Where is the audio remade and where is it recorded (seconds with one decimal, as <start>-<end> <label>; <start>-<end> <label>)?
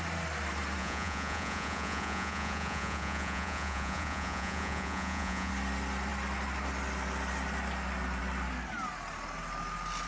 0.0-0.8 recorded; 0.8-5.5 remade; 5.5-10.1 recorded